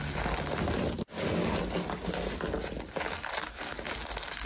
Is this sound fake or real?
real